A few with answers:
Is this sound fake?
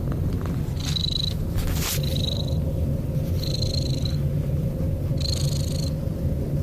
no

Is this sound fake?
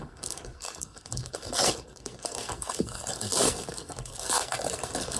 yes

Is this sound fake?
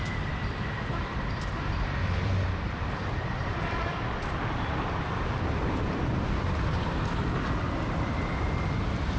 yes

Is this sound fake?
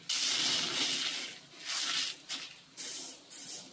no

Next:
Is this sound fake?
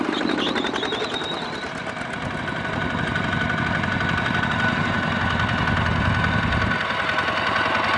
no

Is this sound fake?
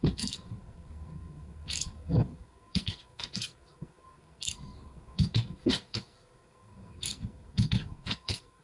yes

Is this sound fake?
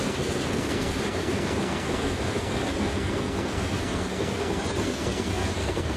yes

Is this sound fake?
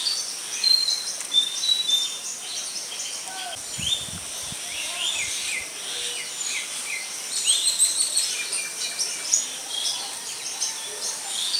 yes